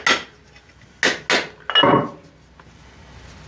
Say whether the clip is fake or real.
real